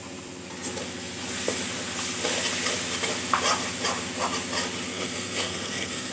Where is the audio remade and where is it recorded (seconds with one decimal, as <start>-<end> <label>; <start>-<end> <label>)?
0.0-4.9 recorded; 4.9-6.1 remade